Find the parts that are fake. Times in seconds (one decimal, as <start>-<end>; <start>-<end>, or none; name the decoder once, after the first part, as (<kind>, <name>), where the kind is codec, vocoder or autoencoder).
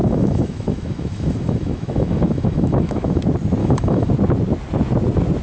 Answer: 0.0-3.2 (autoencoder, DAC-VAE); 3.6-4.1